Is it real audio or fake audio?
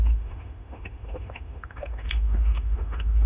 fake